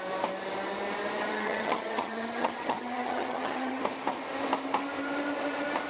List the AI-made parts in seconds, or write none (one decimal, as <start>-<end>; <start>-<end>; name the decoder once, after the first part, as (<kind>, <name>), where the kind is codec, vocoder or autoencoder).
1.3-3.8 (vocoder, HiFi-GAN)